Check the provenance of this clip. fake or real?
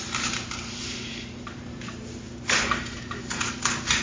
fake